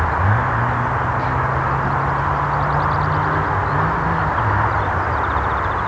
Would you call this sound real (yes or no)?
yes